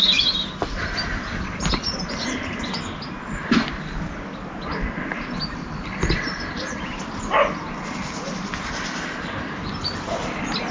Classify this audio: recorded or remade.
recorded